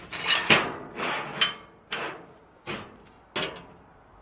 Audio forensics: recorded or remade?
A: recorded